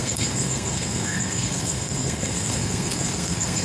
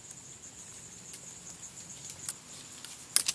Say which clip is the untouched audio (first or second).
second